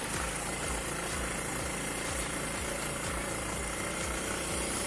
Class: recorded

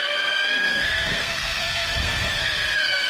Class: remade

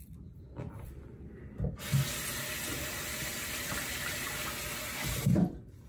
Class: recorded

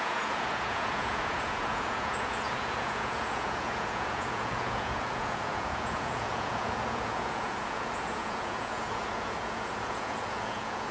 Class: remade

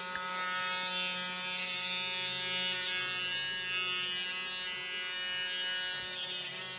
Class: recorded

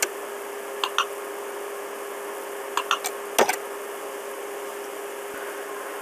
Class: recorded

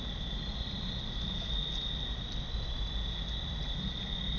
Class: recorded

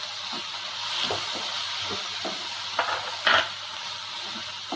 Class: recorded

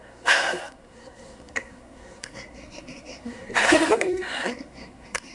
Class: remade